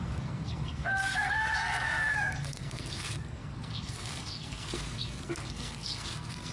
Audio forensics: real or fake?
fake